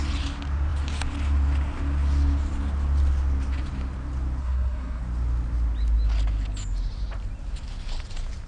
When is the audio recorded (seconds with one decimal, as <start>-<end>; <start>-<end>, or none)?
0.0-4.4; 5.0-8.5